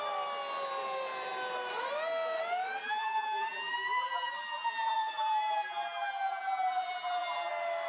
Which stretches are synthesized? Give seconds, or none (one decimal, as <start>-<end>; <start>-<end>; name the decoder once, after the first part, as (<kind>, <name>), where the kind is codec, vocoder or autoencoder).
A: 2.8-7.5 (vocoder, BigVGAN v2)